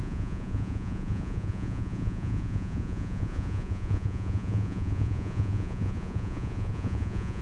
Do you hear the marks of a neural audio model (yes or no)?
yes